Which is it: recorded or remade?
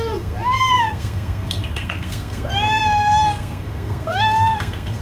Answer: remade